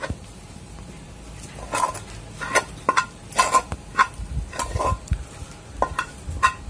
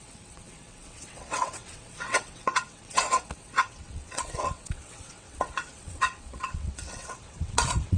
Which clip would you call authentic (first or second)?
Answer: first